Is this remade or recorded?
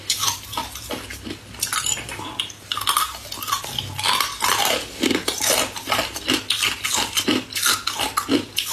recorded